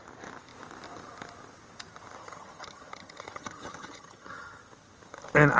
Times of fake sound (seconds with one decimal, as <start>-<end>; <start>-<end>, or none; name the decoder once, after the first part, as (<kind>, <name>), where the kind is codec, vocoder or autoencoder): 2.2-4.6 (vocoder, HiFi-GAN)